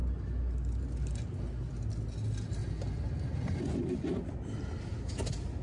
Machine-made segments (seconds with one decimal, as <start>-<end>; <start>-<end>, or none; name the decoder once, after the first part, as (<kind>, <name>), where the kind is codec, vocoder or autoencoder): none